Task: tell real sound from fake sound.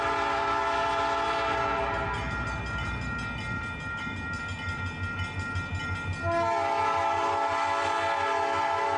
fake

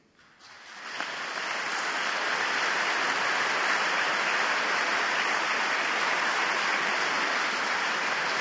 real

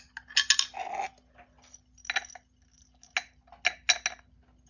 real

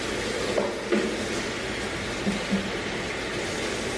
real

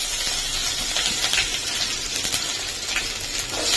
real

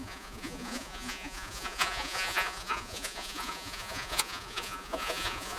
fake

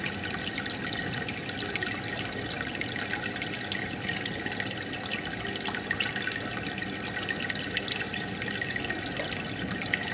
real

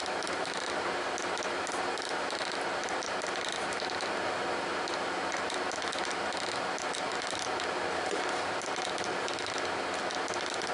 real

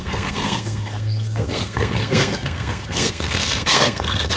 fake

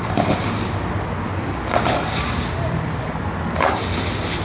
real